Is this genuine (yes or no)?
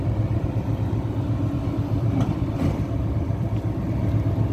no